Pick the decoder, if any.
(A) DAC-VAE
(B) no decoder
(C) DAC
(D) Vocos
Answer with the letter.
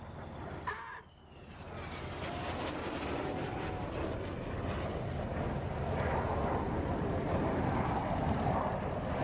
B